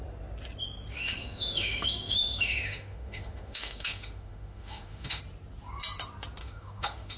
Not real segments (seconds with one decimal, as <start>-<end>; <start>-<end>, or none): 0.9-5.2; 6.4-7.2